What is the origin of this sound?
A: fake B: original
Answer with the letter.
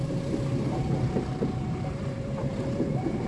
A